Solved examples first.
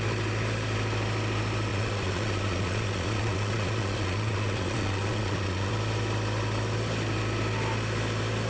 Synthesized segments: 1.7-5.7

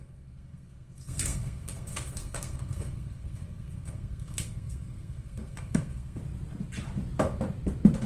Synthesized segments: 0.0-6.2

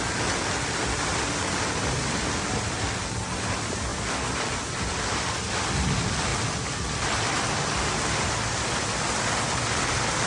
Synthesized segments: none

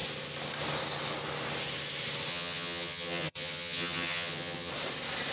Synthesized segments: 2.3-4.7

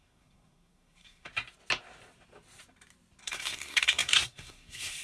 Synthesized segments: 0.0-1.3; 3.2-5.0

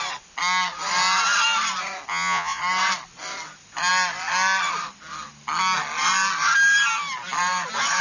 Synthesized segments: 2.1-2.6